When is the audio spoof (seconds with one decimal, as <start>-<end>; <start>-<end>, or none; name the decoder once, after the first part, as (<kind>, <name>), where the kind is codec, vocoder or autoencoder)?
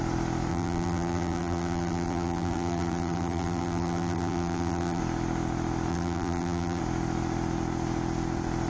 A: 0.5-5.0 (vocoder, BigVGAN v2); 5.9-6.8